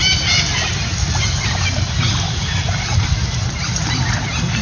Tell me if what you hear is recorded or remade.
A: recorded